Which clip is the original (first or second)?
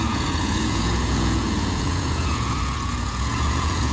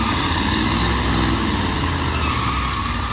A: second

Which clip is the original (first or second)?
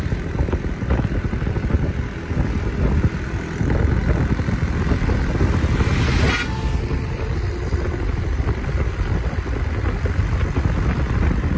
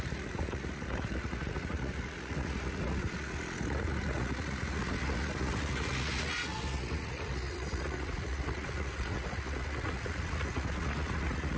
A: first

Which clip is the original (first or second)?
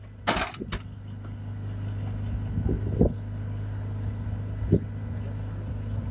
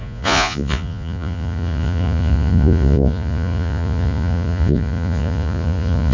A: first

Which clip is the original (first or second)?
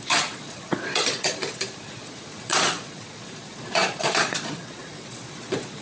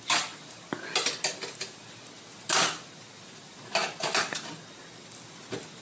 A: second